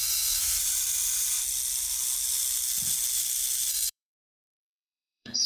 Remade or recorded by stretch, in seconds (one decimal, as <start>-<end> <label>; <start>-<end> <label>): 0.0-0.4 remade; 0.4-3.7 recorded; 3.7-5.5 remade